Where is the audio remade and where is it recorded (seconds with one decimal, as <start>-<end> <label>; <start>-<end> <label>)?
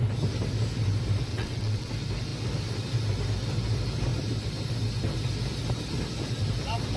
0.0-1.3 recorded; 1.3-1.9 remade; 1.9-7.0 recorded